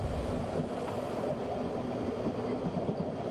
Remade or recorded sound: recorded